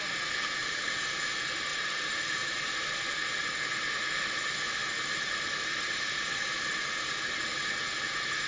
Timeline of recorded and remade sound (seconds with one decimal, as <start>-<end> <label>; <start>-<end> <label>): 0.0-0.6 recorded; 0.6-1.1 remade; 1.1-1.7 recorded; 1.7-3.1 remade; 3.1-4.8 recorded; 4.8-7.7 remade; 7.7-8.5 recorded